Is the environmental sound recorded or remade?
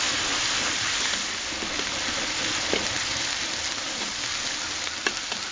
recorded